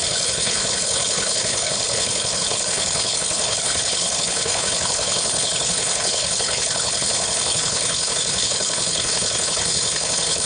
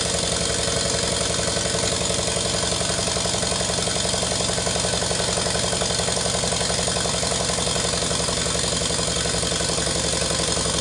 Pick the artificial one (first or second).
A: first